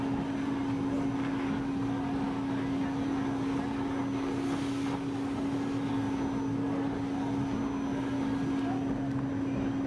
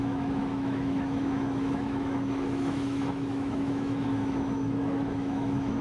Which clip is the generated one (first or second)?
second